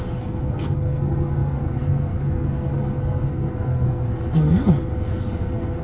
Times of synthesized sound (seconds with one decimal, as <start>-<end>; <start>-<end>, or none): 0.0-5.8